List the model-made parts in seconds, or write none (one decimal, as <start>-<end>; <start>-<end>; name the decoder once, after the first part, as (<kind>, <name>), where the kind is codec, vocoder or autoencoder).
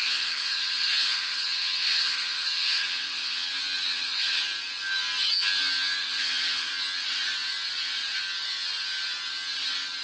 0.0-3.5 (vocoder, HiFi-GAN); 3.9-4.4; 6.0-6.7